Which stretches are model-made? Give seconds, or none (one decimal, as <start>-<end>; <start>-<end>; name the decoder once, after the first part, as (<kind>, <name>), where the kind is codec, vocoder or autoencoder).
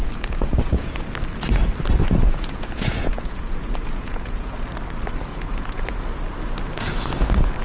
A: 0.0-0.9 (vocoder, Vocos); 2.0-4.6; 5.3-6.0